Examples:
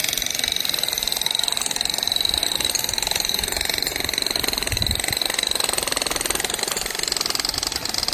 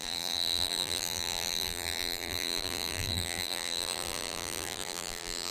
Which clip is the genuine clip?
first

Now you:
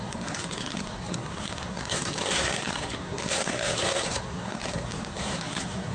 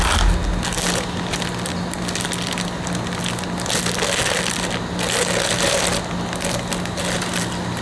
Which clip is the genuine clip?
second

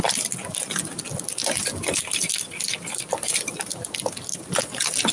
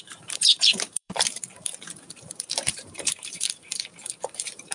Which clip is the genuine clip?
first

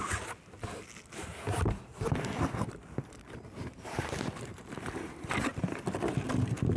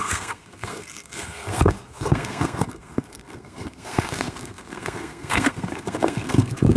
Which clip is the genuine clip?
first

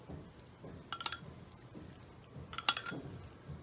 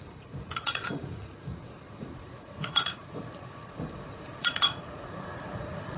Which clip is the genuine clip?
first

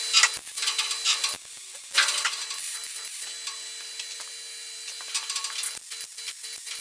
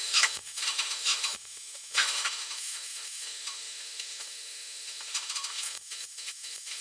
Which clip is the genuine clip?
first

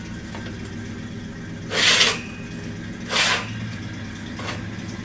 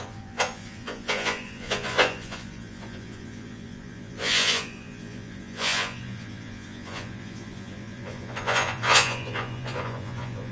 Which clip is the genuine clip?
first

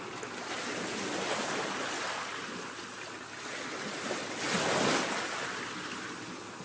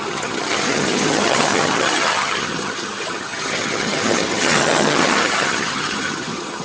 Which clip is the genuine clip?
first